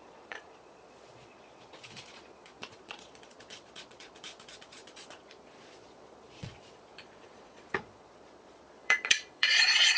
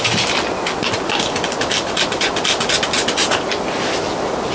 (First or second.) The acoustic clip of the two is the second